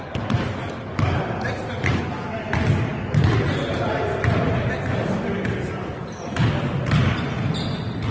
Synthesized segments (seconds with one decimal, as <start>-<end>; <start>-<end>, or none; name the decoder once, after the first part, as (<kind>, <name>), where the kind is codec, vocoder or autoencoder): none